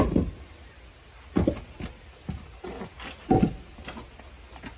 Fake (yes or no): no